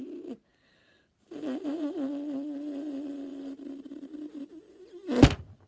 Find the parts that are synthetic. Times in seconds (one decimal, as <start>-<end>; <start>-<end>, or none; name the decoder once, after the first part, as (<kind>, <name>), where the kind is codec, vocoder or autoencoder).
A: 0.5-2.1 (vocoder, BigVGAN v2); 3.3-4.1